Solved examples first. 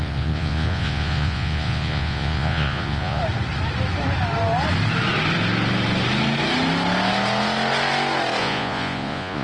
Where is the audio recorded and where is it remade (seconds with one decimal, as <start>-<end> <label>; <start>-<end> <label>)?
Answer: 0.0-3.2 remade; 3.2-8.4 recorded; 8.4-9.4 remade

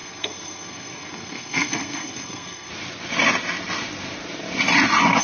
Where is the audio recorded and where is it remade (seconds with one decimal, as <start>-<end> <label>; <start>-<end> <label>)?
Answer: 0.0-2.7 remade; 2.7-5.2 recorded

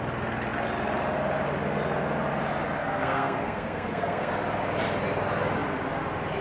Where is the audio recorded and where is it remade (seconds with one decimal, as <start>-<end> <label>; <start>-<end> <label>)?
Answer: 0.0-2.8 recorded; 2.8-4.3 remade; 4.3-6.4 recorded

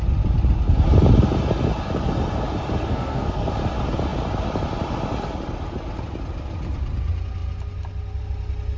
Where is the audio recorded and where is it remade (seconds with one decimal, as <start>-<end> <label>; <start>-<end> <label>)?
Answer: 0.0-2.8 recorded; 2.8-3.5 remade; 3.5-8.8 recorded

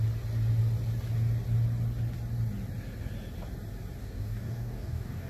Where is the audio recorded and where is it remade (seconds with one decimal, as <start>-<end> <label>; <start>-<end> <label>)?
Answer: 0.0-4.0 recorded; 4.0-5.3 remade

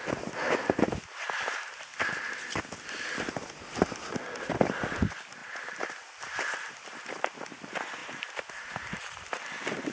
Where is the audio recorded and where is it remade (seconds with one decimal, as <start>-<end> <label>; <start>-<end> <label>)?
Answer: 0.0-9.9 recorded

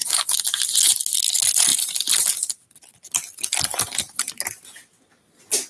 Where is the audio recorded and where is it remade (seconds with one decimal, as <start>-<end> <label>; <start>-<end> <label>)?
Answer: 0.0-5.7 recorded